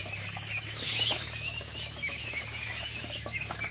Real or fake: fake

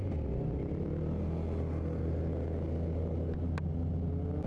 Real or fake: real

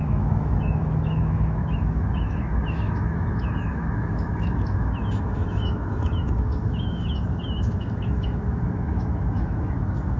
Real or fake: fake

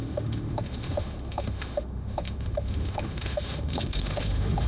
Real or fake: fake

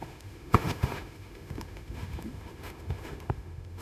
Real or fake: fake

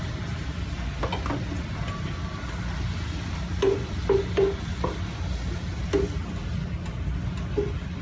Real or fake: real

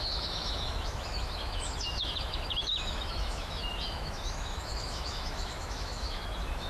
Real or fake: fake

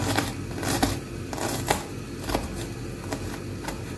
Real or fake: real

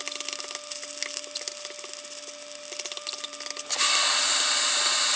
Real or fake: real